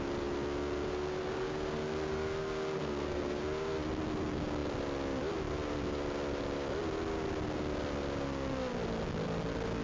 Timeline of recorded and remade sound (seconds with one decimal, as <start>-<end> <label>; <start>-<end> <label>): 0.0-0.9 recorded; 0.9-3.4 remade; 3.4-9.8 recorded